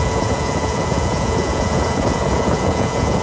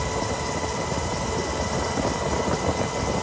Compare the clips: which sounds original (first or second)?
second